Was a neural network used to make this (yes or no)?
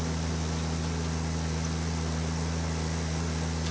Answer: no